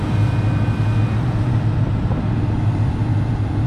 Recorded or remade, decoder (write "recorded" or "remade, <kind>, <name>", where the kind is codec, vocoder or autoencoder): recorded